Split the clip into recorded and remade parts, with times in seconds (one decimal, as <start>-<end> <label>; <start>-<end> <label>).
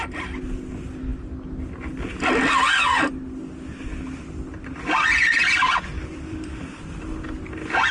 0.0-5.4 recorded; 5.4-6.8 remade; 6.8-7.9 recorded